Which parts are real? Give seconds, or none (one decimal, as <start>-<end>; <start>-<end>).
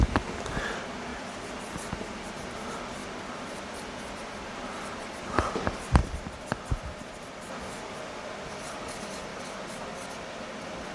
0.0-1.1; 2.2-3.0; 5.2-6.0; 7.5-10.9